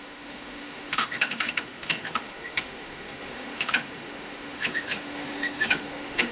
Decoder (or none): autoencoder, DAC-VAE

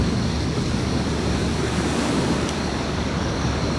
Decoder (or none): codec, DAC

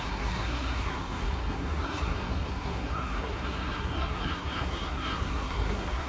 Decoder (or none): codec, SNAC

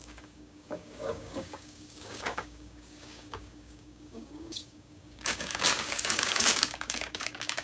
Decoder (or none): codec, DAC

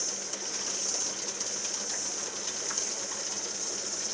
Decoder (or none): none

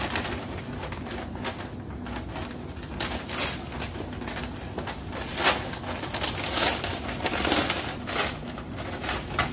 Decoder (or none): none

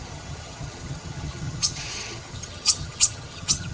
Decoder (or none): vocoder, HiFi-GAN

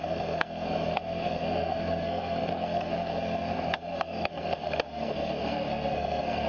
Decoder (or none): codec, SNAC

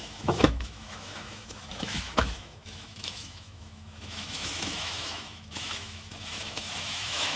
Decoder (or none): autoencoder, DAC-VAE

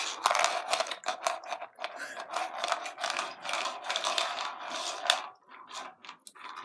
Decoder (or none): none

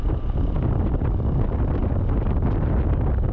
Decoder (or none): none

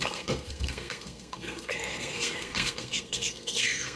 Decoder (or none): codec, SNAC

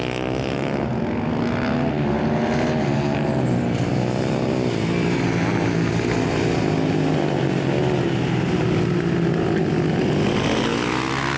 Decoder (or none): none